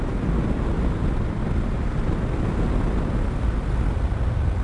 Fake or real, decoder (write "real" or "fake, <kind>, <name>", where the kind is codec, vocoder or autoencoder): real